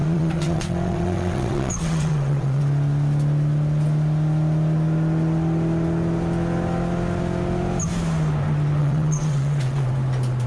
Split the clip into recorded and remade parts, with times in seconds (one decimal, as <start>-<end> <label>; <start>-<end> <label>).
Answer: 0.0-2.6 remade; 2.6-8.8 recorded; 8.8-9.9 remade; 9.9-10.5 recorded